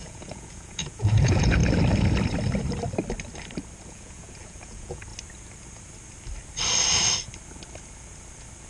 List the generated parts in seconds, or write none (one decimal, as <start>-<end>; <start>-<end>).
0.0-1.6; 3.9-5.1

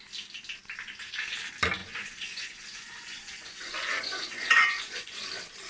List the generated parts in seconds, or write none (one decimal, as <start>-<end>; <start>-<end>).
1.8-5.2

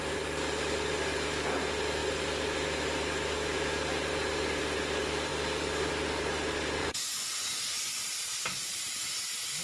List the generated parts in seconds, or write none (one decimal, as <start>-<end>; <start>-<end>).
6.8-7.9

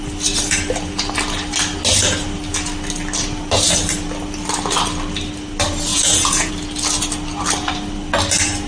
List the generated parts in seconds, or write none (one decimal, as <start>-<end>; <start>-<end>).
5.9-6.5

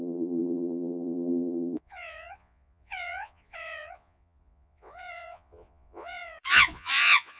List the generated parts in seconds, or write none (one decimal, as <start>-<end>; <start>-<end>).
0.0-7.4